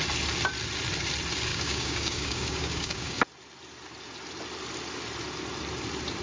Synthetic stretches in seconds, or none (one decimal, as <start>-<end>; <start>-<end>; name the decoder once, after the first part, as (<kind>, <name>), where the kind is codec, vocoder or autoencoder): 1.5-3.2 (codec, DAC)